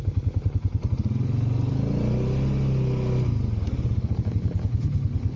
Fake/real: real